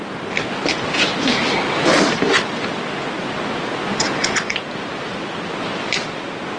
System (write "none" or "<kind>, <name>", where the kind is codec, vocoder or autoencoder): none